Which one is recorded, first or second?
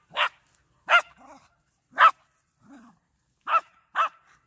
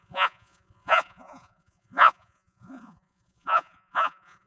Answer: first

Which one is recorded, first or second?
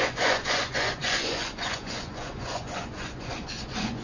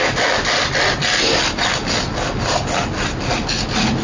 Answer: second